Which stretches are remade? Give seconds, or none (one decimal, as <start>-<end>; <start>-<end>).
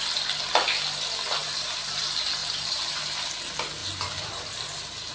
1.4-2.0; 2.4-3.0; 3.8-5.1